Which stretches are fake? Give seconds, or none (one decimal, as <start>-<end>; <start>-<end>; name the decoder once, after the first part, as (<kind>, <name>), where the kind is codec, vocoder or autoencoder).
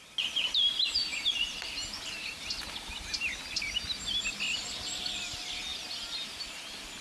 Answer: none